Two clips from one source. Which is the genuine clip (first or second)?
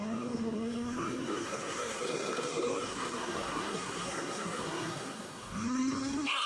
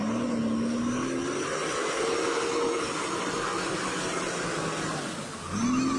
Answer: second